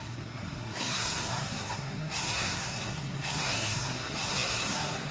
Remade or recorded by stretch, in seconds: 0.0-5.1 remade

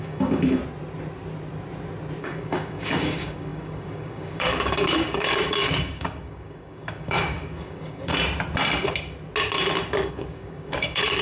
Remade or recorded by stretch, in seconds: 0.0-0.6 remade; 0.6-2.2 recorded; 2.2-8.1 remade; 8.1-10.1 recorded; 10.1-11.2 remade

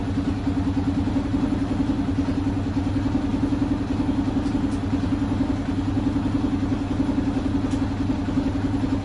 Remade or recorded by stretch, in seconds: 0.0-9.0 recorded

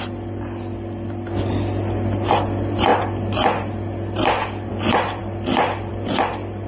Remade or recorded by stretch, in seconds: 0.0-6.7 recorded

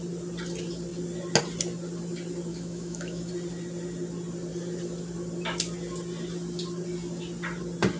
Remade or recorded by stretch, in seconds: 0.0-2.5 recorded; 2.5-3.3 remade; 3.3-8.0 recorded